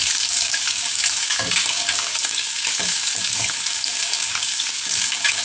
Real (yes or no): no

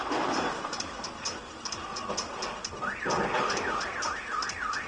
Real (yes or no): yes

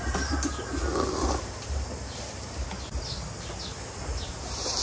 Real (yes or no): yes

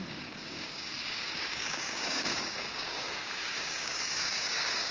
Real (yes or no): no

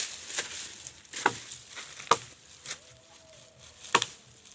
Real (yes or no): yes